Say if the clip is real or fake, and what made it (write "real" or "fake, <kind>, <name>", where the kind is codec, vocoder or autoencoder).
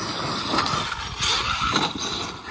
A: real